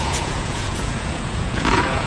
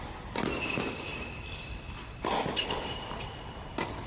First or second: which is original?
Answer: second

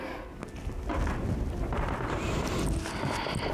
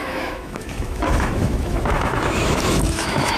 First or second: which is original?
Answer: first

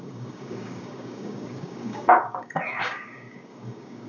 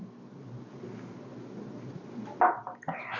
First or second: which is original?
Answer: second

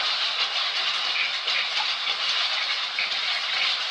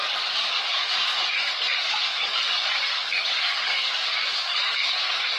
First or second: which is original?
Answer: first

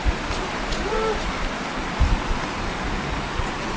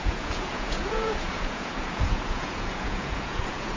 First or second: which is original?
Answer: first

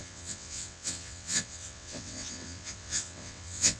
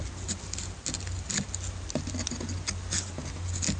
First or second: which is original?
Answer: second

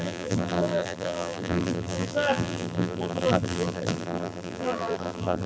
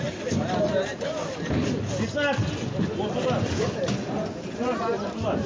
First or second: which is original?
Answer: second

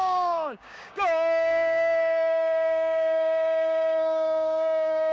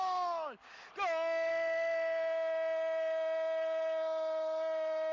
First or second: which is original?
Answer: second